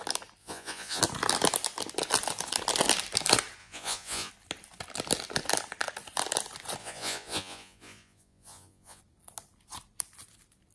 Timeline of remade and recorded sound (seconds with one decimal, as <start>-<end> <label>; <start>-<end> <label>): 0.0-0.4 recorded; 0.4-1.0 remade; 1.0-3.6 recorded; 3.6-4.3 remade; 4.3-6.8 recorded; 6.8-9.0 remade; 9.0-10.7 recorded